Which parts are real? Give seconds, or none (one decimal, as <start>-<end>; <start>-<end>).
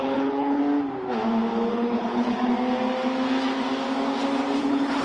0.6-1.7; 2.5-4.6